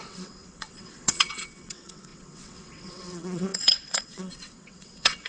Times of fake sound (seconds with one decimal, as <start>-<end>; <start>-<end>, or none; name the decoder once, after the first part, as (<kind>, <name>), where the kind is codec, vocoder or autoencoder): 0.0-5.3 (vocoder, WaveNeXt)